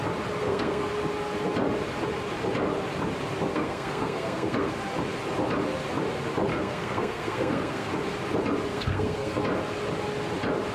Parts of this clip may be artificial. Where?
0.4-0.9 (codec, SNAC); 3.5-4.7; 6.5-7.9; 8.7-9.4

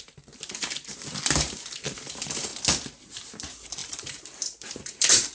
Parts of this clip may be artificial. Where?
0.0-2.5 (vocoder, BigVGAN v2); 3.1-5.3

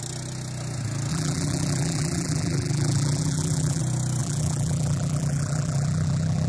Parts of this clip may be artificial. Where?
1.1-3.8 (vocoder, BigVGAN v2); 4.2-6.5

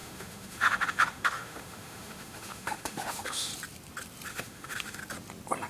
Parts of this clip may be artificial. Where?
0.0-3.5 (autoencoder, DAC-VAE); 4.3-5.0